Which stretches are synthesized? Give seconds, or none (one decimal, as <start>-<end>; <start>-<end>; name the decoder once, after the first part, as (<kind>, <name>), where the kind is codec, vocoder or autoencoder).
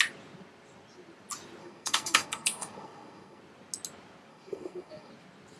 1.6-3.4 (codec, SNAC); 4.3-5.1